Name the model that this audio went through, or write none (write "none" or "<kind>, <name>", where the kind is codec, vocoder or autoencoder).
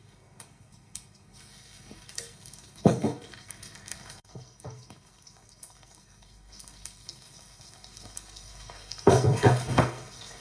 codec, SNAC